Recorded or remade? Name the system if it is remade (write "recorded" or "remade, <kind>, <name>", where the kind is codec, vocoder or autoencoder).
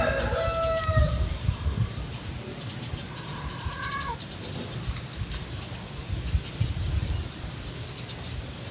recorded